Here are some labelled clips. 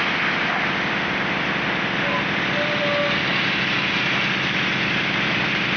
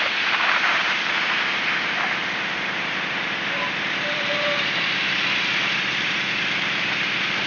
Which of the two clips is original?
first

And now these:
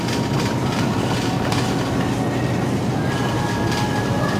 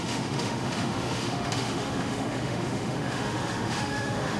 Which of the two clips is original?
first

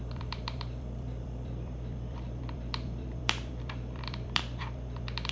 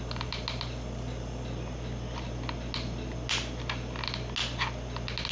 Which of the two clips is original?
second